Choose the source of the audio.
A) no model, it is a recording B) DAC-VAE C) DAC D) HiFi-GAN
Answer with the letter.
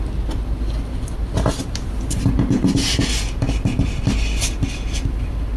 A